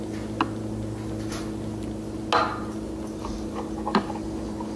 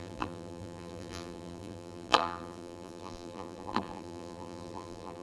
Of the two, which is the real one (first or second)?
first